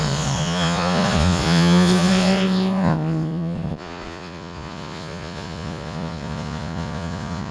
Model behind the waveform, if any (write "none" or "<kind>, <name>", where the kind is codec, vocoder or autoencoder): vocoder, Vocos